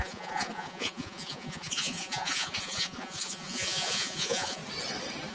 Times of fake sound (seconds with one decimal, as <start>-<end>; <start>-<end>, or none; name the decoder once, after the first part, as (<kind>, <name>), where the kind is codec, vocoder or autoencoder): 0.0-4.6 (vocoder, Vocos)